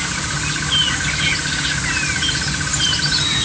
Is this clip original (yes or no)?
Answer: yes